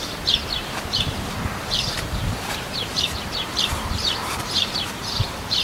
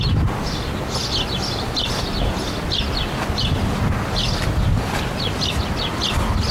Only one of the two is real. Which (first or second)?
second